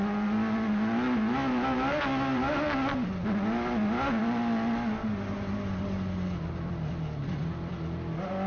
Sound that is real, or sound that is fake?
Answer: real